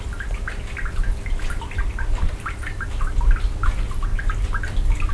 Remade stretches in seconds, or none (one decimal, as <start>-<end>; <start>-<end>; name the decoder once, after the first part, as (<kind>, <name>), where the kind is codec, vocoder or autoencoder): none